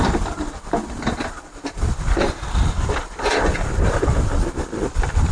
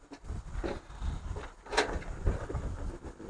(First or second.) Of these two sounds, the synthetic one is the first